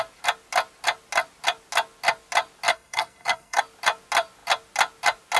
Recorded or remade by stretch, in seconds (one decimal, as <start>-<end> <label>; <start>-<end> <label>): 0.0-2.7 recorded; 2.7-3.6 remade; 3.6-5.4 recorded